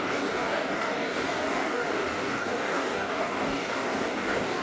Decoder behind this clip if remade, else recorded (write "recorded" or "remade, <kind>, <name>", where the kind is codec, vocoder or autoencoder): remade, codec, DAC